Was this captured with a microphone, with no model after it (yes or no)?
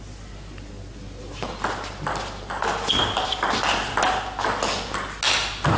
yes